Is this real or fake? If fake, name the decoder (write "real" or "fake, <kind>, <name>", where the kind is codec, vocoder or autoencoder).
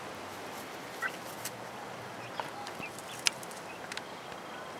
real